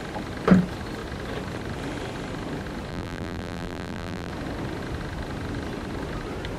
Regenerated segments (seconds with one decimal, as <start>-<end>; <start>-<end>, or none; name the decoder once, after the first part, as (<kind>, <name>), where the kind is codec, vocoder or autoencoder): 2.9-4.3 (vocoder, BigVGAN v2)